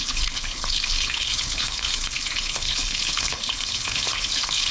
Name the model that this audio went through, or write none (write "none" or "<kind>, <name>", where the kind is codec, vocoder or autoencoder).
codec, HILCodec